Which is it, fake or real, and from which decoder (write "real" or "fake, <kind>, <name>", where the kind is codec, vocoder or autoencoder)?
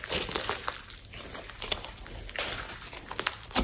real